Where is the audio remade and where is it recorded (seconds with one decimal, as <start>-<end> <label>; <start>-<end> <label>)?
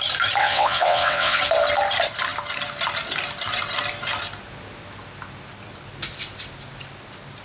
0.0-0.4 recorded; 0.4-1.4 remade; 1.4-7.4 recorded